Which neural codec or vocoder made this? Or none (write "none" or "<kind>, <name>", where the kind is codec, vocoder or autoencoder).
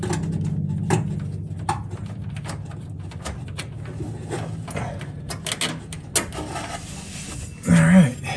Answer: none